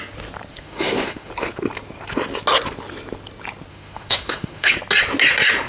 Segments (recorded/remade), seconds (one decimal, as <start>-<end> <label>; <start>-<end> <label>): 0.0-0.5 recorded; 0.5-1.3 remade; 1.3-3.7 recorded; 3.7-4.8 remade; 4.8-5.7 recorded